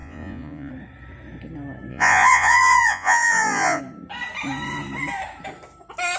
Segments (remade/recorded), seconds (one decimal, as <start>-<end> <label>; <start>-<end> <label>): 0.0-0.7 remade; 0.7-1.9 recorded; 1.9-3.8 remade; 3.8-6.2 recorded